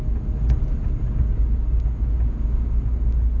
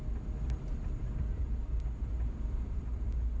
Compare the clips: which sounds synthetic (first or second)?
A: second